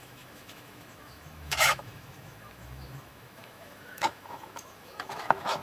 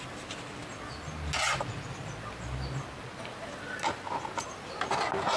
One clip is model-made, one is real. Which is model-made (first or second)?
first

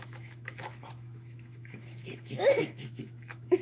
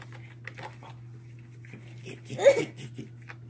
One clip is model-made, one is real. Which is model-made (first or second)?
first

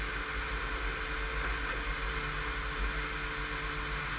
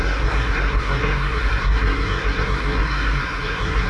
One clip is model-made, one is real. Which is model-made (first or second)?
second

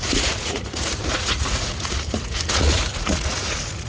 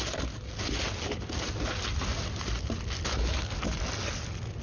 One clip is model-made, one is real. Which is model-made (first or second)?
first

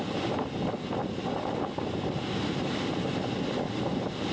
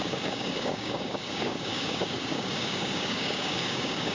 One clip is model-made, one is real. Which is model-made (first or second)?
second